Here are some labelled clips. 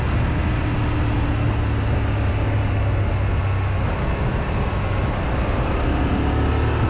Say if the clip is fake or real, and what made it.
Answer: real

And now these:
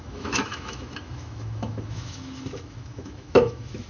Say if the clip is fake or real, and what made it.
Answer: fake, autoencoder, DAC-VAE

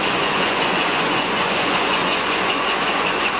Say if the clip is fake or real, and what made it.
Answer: fake, vocoder, Vocos